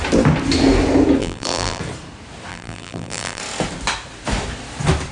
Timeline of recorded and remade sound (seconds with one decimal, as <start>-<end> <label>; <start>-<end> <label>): 0.0-1.2 recorded; 1.2-1.8 remade; 1.8-2.5 recorded; 2.5-3.4 remade; 3.4-5.1 recorded